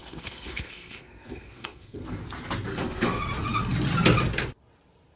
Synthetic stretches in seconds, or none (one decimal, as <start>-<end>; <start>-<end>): 0.0-2.2; 2.7-3.2